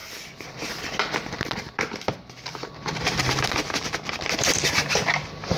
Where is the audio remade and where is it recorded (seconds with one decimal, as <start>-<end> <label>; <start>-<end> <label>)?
0.0-2.9 recorded; 2.9-5.6 remade